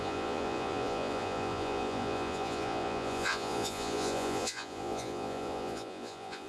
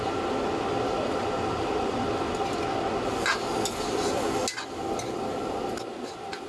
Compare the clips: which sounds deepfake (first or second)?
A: first